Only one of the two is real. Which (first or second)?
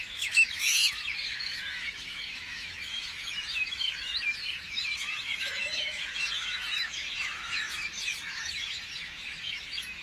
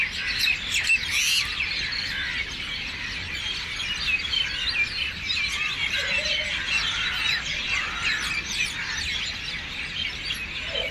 second